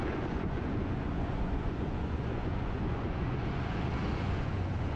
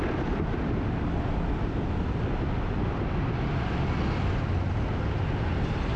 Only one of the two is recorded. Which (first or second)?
second